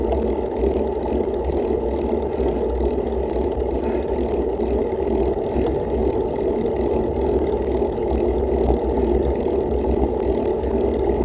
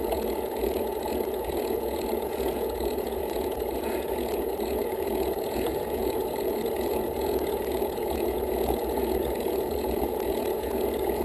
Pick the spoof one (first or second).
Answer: second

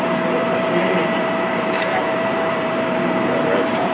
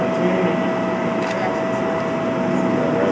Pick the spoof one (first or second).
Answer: first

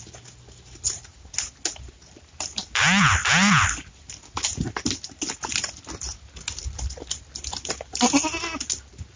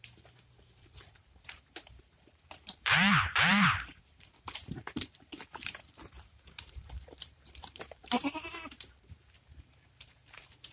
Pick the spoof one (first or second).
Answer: second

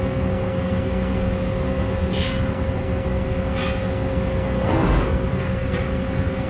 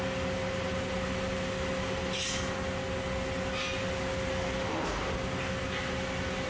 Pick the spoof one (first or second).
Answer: first